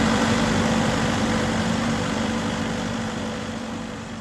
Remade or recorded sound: remade